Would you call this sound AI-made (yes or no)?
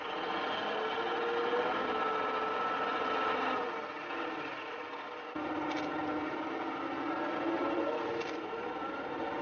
no